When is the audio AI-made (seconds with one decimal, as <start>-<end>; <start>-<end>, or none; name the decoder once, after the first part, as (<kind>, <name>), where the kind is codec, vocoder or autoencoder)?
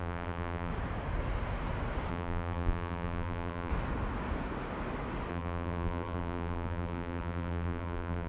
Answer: 0.0-0.7 (vocoder, BigVGAN v2); 2.1-3.7; 5.3-8.3